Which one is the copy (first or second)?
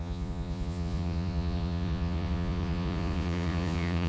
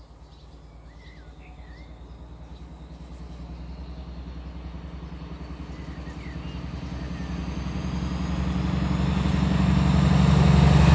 first